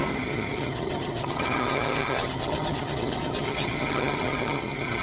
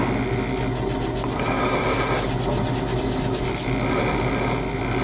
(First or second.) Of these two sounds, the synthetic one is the first